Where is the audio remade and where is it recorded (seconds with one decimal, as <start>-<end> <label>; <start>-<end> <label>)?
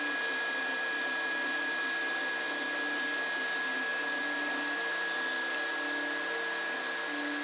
0.0-7.4 recorded